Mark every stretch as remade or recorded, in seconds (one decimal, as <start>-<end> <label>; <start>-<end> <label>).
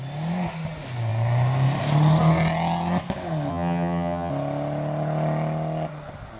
0.0-3.5 recorded; 3.5-4.3 remade; 4.3-6.4 recorded